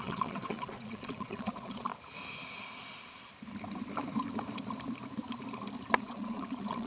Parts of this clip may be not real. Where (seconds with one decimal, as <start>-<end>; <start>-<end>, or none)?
0.0-1.9; 6.0-6.9